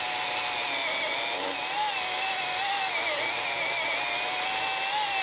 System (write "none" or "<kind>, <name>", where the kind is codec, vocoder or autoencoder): none